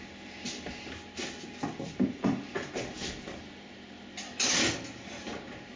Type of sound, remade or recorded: recorded